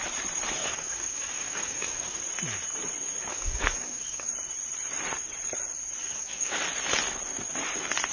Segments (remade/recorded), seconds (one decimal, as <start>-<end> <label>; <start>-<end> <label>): 0.0-0.6 recorded; 0.6-2.2 remade; 2.2-3.3 recorded; 3.3-4.3 remade; 4.3-6.0 recorded; 6.0-6.6 remade; 6.6-8.1 recorded